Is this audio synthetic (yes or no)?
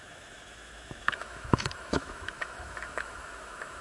yes